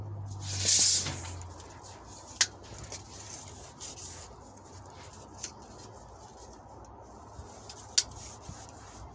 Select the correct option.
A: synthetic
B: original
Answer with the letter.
B